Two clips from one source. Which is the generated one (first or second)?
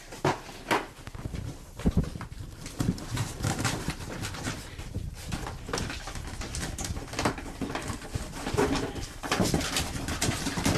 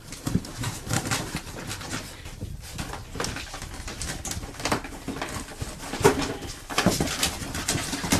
first